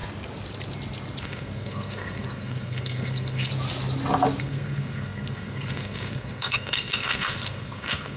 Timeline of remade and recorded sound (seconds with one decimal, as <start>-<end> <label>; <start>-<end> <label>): 0.0-1.2 recorded; 1.2-3.5 remade; 3.5-4.4 recorded; 4.4-8.2 remade